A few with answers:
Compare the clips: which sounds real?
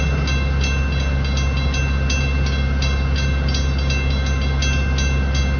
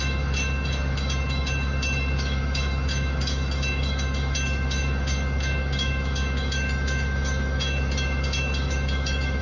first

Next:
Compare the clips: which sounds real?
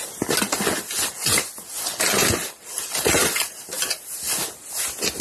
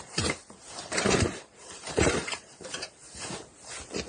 first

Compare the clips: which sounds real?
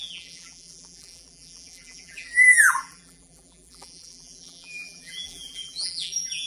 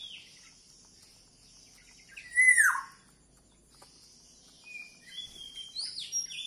second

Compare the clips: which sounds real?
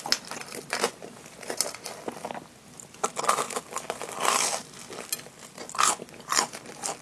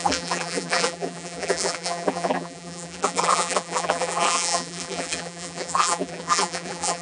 first